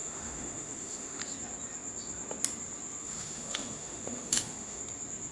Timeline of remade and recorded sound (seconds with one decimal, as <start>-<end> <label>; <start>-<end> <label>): 0.0-1.2 remade; 1.2-3.0 recorded; 3.0-4.8 remade; 4.8-5.3 recorded